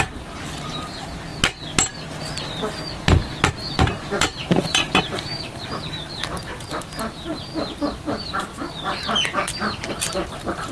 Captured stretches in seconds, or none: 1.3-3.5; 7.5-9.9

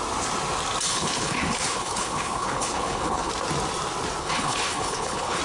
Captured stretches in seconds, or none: 0.0-0.9; 3.3-4.2